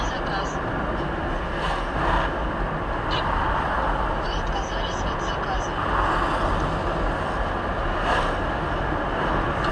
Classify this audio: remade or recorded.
recorded